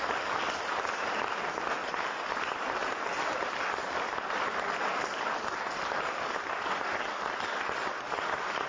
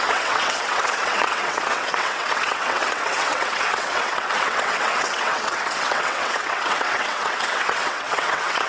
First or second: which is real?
first